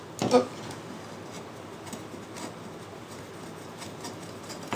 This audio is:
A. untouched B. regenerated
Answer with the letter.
A